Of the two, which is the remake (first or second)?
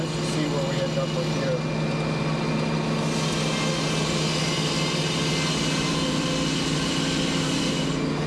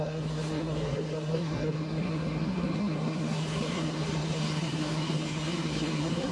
second